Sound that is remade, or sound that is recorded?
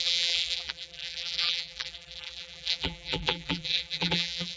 remade